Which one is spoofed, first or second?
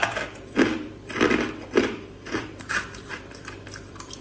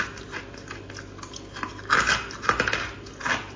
first